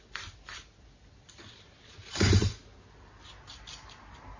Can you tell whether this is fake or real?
real